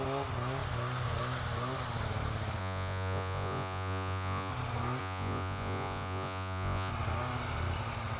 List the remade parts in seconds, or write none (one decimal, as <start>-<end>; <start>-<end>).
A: 2.6-4.5; 5.0-6.9